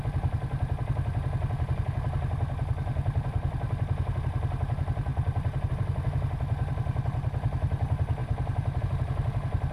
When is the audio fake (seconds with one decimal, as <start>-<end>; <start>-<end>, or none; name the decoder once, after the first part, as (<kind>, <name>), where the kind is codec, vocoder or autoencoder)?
5.1-5.7 (vocoder, BigVGAN v2); 8.2-8.8